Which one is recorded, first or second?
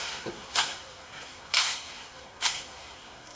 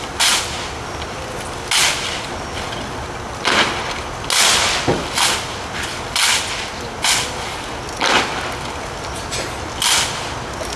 second